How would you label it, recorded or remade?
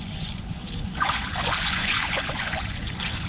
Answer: remade